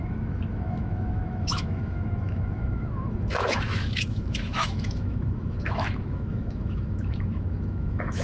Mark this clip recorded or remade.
remade